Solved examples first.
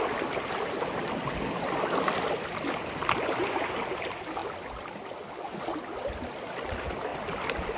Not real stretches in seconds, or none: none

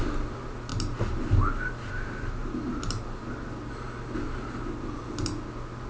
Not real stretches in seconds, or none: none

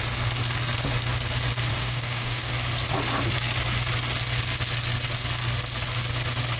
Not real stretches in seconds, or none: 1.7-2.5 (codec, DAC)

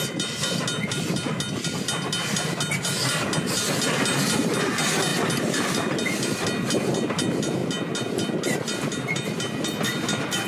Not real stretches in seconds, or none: none

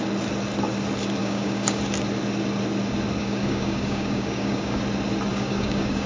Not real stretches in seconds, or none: 1.2-1.8 (codec, DAC); 3.2-4.8; 5.3-6.1